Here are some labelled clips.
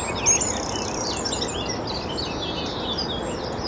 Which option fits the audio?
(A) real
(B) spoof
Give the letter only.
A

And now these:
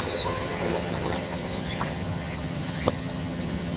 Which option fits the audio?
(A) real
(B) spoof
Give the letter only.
B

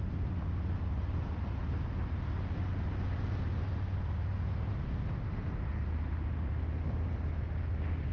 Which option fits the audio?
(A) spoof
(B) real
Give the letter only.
B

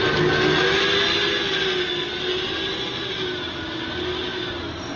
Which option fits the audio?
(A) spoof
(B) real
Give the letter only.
B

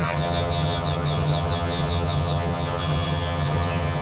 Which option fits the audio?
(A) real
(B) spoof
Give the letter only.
B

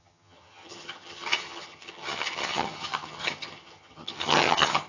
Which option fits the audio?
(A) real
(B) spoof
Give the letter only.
B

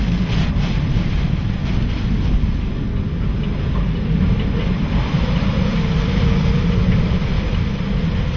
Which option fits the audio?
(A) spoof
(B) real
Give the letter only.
B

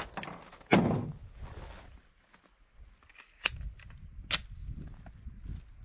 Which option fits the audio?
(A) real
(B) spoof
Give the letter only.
A